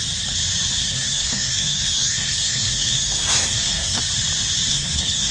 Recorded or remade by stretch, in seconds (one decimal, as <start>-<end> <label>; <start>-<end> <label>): 0.0-0.8 recorded; 0.8-4.0 remade; 4.0-4.7 recorded; 4.7-5.3 remade